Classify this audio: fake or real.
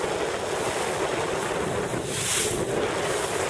real